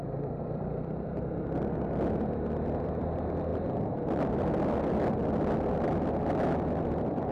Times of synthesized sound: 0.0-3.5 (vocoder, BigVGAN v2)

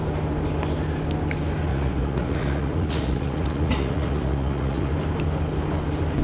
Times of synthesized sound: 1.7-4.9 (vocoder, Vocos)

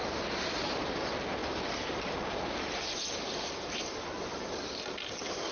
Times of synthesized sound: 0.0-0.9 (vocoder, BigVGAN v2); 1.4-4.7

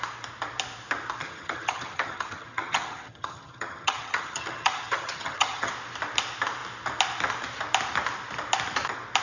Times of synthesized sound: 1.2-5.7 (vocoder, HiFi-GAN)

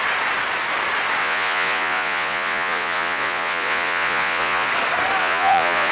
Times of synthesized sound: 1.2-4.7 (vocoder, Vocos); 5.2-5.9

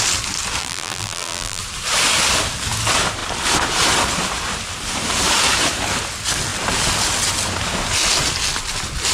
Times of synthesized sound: 0.6-1.6 (vocoder, BigVGAN v2)

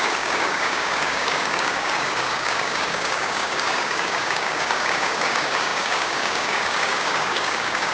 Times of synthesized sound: 0.0-7.9 (codec, DAC)